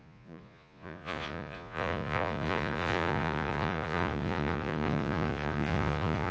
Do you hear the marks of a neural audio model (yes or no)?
yes